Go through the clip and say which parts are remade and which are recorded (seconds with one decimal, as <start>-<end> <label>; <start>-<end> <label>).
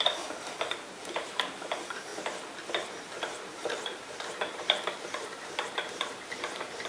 0.0-2.1 remade; 2.1-2.7 recorded; 2.7-6.9 remade